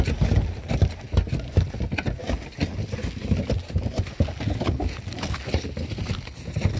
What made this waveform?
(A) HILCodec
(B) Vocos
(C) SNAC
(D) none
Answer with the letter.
D